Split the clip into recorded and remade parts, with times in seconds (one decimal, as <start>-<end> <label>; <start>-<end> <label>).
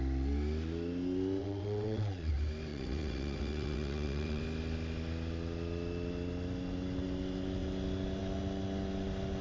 0.0-1.4 recorded; 1.4-2.3 remade; 2.3-2.7 recorded; 2.7-4.4 remade; 4.4-9.4 recorded